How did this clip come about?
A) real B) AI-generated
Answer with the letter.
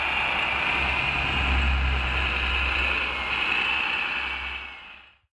A